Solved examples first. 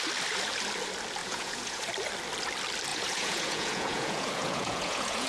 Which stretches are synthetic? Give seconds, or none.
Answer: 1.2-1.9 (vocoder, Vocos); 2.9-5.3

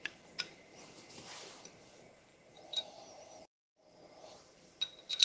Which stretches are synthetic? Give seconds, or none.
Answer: 0.7-1.9 (vocoder, BigVGAN v2); 2.3-3.5

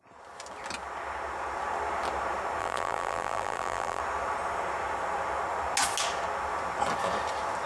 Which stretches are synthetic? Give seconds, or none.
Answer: 2.6-4.0 (vocoder, BigVGAN v2)

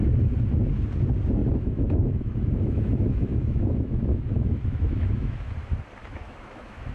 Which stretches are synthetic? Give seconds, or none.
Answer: 1.4-5.5 (autoencoder, DAC-VAE); 6.0-6.9